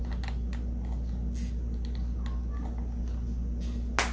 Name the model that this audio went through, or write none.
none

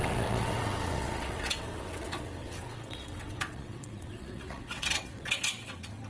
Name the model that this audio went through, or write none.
vocoder, WaveNeXt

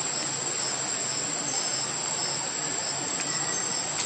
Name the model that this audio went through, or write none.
none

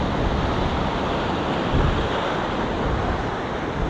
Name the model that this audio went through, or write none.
none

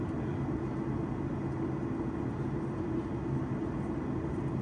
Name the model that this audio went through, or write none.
none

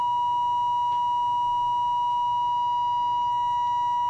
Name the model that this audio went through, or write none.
none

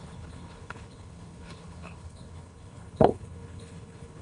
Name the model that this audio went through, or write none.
codec, HILCodec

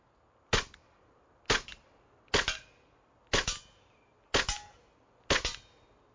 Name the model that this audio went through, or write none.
none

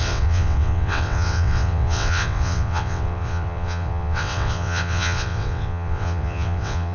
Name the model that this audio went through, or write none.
vocoder, WaveNeXt